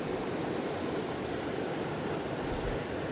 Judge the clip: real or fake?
real